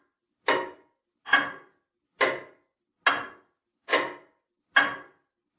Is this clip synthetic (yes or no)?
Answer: no